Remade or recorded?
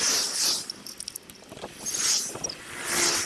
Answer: recorded